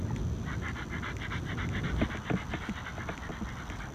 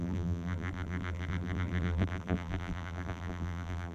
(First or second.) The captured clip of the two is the first